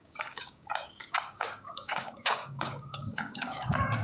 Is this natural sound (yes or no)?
no